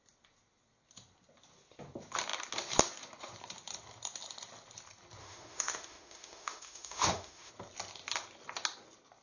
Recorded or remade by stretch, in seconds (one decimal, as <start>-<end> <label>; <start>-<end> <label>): 0.0-5.2 recorded; 5.2-7.5 remade; 7.5-9.2 recorded